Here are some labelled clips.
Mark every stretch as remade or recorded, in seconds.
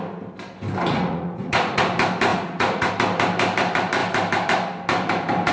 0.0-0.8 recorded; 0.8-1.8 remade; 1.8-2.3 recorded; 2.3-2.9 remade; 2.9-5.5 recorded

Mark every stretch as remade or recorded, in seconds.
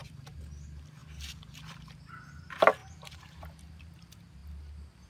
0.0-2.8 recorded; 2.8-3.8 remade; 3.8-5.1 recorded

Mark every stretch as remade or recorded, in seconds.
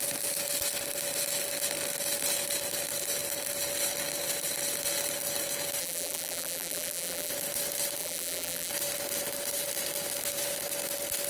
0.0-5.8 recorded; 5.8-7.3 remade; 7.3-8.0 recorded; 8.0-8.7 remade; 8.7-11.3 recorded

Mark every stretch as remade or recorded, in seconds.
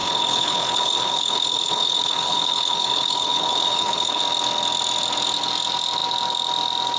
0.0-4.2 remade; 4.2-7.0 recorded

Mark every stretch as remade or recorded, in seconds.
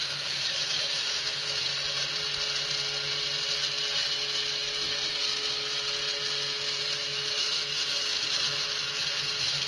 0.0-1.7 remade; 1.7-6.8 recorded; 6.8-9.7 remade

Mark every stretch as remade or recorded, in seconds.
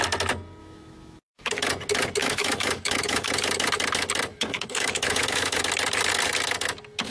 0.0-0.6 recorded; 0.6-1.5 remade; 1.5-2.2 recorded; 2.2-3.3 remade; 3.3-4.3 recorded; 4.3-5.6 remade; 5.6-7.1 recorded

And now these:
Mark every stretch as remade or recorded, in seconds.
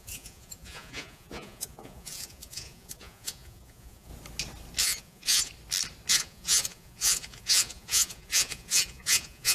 0.0-4.1 remade; 4.1-4.8 recorded; 4.8-5.5 remade; 5.5-6.1 recorded; 6.1-9.5 remade